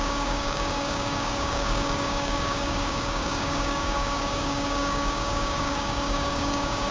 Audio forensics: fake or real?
fake